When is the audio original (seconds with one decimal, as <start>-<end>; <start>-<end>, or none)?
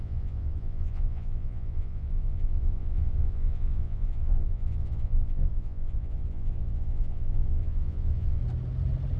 8.4-9.2